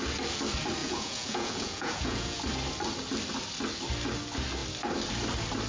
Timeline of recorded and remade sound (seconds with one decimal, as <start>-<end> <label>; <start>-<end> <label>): 0.0-0.8 recorded; 0.8-2.4 remade; 2.4-5.7 recorded